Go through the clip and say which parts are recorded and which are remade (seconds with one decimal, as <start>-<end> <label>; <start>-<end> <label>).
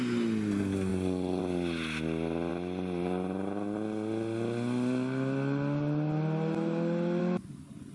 0.0-7.9 recorded